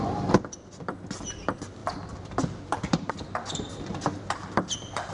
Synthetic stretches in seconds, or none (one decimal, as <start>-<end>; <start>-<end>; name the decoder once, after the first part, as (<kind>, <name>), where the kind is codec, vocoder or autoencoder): 1.8-3.1 (vocoder, BigVGAN v2)